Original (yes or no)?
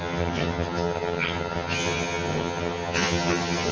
no